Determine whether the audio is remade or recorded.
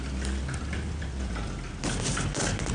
recorded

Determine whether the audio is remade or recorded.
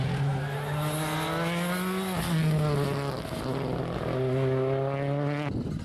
recorded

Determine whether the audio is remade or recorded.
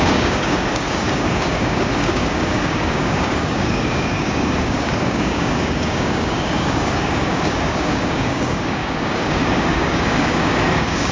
remade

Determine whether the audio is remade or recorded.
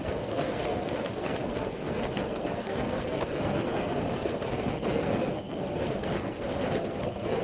remade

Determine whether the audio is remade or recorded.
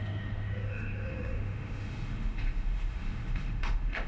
remade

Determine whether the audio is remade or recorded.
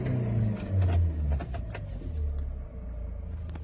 recorded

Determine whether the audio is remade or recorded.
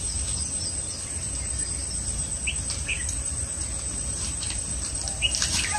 remade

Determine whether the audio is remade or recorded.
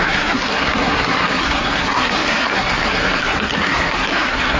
remade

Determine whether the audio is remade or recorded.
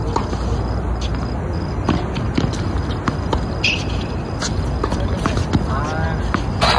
recorded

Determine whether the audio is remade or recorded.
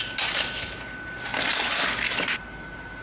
recorded